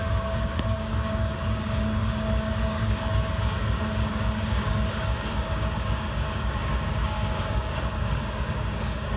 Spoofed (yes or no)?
yes